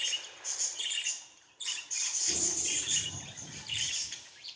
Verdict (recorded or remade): remade